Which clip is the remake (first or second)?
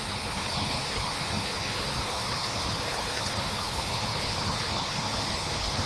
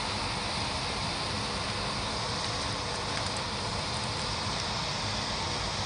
first